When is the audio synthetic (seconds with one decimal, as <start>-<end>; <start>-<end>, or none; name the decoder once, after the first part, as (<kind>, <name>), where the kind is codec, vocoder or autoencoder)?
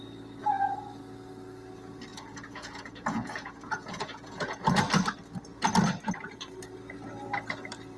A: 2.1-4.6 (vocoder, Vocos)